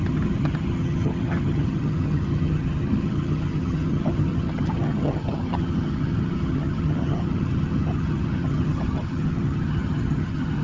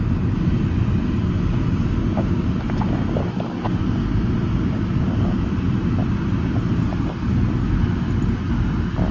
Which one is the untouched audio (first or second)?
second